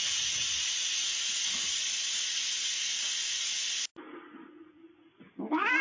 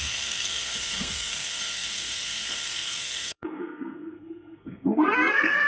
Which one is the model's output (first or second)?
second